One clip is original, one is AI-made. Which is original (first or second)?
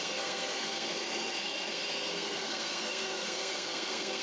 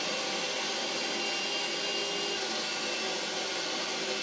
second